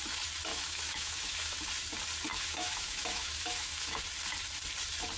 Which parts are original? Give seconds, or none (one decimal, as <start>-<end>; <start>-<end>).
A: 0.0-0.5; 1.7-2.3; 4.0-5.2